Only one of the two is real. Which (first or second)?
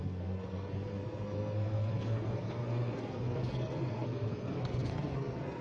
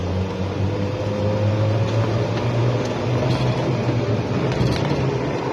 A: second